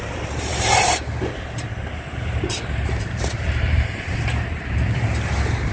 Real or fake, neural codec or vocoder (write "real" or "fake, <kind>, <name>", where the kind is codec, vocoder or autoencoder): fake, vocoder, BigVGAN v2